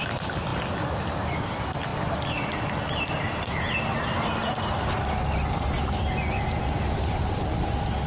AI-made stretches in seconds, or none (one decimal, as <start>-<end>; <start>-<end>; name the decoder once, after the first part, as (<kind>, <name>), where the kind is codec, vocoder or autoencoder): none